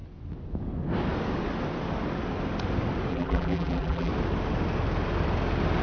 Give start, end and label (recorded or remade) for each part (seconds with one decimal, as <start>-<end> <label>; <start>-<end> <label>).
0.0-3.1 recorded; 3.1-4.1 remade; 4.1-5.8 recorded